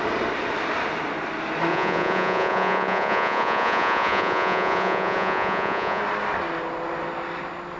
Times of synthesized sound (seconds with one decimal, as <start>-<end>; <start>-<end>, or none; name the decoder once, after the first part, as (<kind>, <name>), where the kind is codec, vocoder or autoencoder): 1.7-6.0 (vocoder, Vocos)